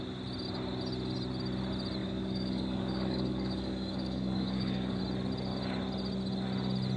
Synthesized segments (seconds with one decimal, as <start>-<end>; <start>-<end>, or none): 2.0-5.0